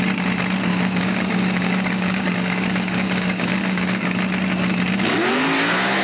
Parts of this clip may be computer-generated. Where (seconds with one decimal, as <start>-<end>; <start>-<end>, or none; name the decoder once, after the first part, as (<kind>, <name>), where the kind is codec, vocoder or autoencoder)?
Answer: 0.7-4.2 (codec, DAC)